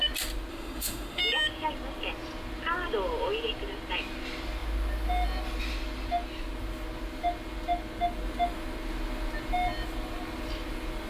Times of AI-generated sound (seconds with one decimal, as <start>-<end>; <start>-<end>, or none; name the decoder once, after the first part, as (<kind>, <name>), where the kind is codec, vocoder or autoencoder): 0.5-1.2 (autoencoder, DAC-VAE)